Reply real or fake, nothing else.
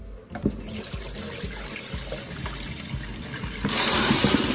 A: real